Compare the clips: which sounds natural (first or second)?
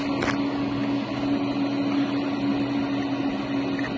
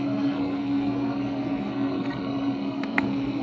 first